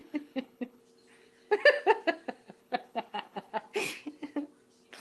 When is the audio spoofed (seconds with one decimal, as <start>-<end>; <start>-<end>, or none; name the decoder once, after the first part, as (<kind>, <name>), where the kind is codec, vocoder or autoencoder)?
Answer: 0.0-0.8 (codec, HILCodec); 2.6-3.5